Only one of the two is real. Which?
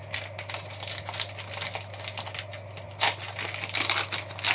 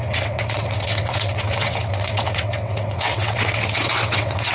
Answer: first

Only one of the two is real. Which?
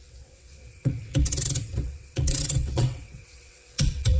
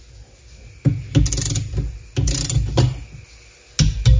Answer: second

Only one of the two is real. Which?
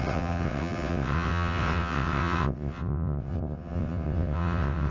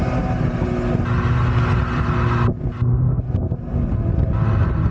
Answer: second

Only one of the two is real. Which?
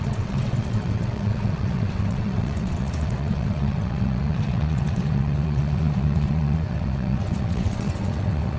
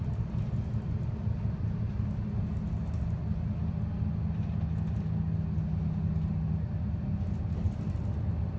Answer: second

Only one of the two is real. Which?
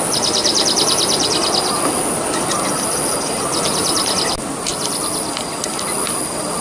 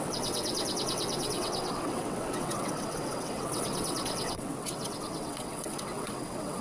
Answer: first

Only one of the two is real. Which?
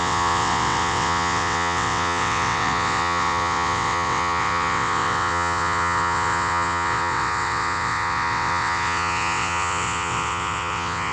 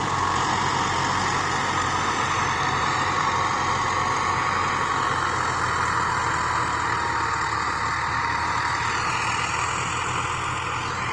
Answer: second